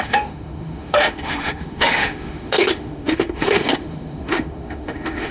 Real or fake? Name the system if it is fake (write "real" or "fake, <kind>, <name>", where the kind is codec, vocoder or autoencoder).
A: fake, autoencoder, DAC-VAE